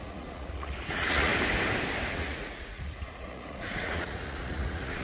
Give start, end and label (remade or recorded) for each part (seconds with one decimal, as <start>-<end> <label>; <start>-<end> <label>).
0.0-1.3 remade; 1.3-2.1 recorded; 2.1-5.0 remade